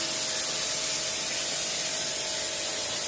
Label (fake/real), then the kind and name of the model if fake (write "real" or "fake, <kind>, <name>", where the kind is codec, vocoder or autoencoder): real